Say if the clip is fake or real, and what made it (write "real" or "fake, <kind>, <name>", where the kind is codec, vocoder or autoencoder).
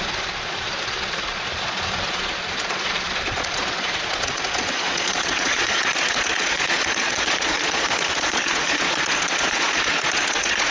fake, vocoder, Vocos